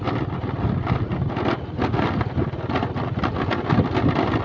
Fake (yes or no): no